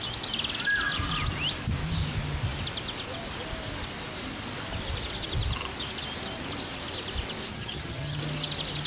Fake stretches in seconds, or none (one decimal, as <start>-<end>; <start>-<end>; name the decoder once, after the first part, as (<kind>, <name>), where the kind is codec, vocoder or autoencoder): 7.5-8.2 (vocoder, HiFi-GAN)